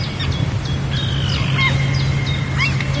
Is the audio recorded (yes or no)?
yes